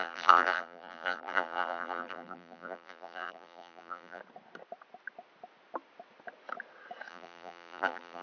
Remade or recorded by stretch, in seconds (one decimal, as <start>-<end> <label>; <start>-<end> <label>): 0.0-4.2 remade; 4.2-7.1 recorded; 7.1-8.2 remade

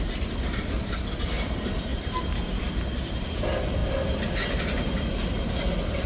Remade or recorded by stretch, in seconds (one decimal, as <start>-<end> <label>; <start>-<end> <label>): 0.0-6.1 recorded